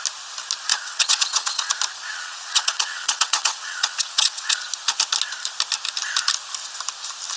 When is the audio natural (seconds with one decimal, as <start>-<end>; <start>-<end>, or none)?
0.0-0.7; 1.7-2.1; 4.6-7.4